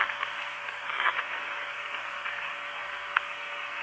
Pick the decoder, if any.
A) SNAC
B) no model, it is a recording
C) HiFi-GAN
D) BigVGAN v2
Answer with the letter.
A